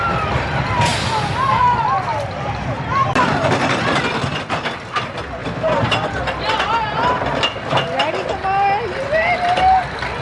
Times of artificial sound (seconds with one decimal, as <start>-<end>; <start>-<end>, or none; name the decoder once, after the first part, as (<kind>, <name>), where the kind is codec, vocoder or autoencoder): none